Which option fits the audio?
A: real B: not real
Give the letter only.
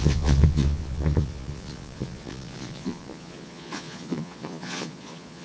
B